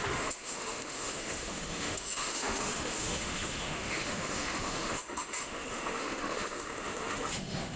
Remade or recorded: remade